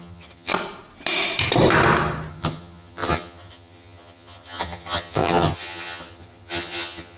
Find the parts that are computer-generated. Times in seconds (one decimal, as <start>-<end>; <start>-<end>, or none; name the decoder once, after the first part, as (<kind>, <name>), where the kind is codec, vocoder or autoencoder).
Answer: 0.0-0.5 (vocoder, HiFi-GAN); 2.3-7.2